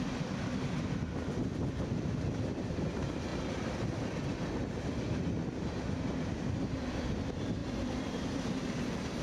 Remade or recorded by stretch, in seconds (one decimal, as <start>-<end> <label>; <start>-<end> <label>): 0.0-9.2 recorded